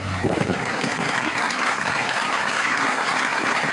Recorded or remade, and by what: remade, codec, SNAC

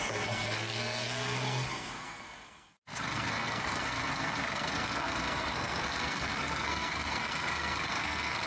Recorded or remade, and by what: remade, codec, SNAC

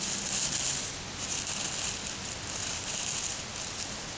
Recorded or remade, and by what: recorded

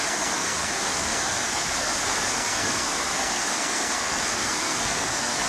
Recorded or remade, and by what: remade, codec, SNAC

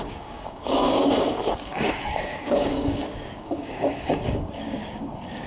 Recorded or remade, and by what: remade, codec, DAC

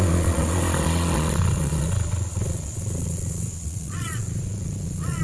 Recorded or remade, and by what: remade, vocoder, Vocos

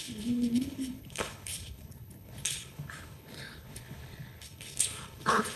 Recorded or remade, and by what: remade, codec, HILCodec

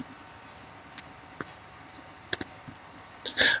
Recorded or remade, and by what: recorded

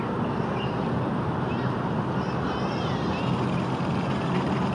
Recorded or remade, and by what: recorded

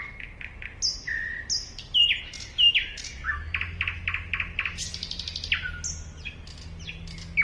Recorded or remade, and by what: recorded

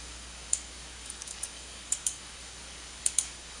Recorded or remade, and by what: remade, codec, DAC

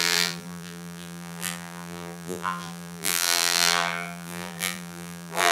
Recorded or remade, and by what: remade, vocoder, BigVGAN v2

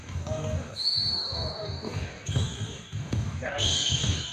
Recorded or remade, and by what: remade, codec, DAC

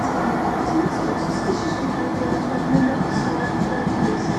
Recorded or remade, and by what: recorded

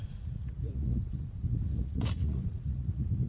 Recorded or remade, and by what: remade, vocoder, Vocos